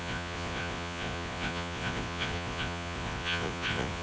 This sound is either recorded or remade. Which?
remade